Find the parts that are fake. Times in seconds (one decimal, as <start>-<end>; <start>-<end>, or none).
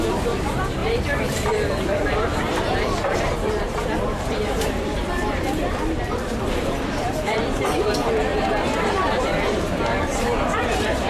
0.0-8.3; 9.2-11.1